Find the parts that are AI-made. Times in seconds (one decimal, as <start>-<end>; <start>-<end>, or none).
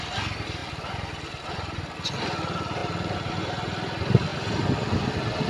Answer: none